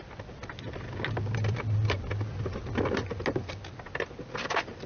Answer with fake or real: real